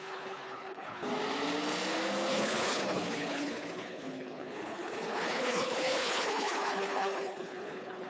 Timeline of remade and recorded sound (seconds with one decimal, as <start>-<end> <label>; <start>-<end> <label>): 0.0-1.1 remade; 1.1-2.3 recorded; 2.3-8.1 remade